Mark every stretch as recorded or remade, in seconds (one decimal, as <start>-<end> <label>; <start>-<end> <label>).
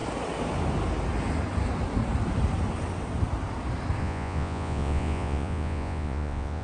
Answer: 0.0-4.0 recorded; 4.0-6.6 remade